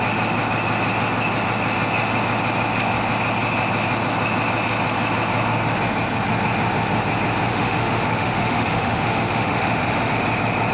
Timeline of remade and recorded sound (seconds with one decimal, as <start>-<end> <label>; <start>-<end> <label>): 0.0-7.5 recorded; 7.5-10.1 remade; 10.1-10.7 recorded

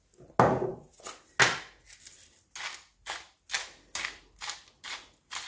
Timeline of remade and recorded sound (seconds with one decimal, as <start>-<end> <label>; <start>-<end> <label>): 0.0-5.5 recorded